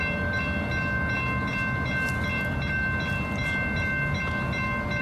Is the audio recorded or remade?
recorded